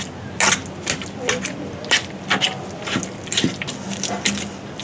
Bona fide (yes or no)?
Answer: yes